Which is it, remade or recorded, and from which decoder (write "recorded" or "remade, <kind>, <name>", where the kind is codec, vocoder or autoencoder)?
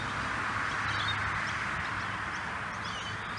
recorded